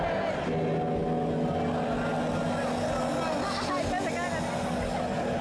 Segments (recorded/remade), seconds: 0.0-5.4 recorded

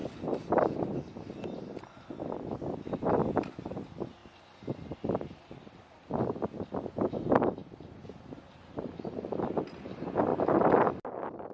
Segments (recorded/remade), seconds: 0.0-4.2 recorded; 4.2-5.8 remade; 5.8-7.6 recorded; 7.6-8.5 remade; 8.5-11.5 recorded

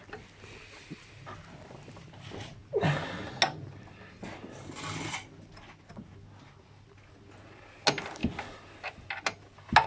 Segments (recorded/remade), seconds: 0.0-9.9 recorded

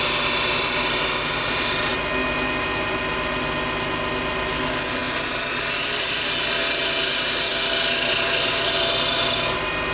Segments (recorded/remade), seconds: 0.0-9.9 recorded

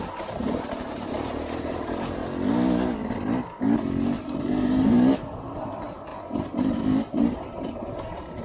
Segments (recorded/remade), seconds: 0.0-2.2 remade; 2.2-4.4 recorded; 4.4-6.1 remade; 6.1-7.1 recorded; 7.1-8.4 remade